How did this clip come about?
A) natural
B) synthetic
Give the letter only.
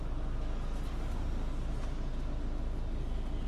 A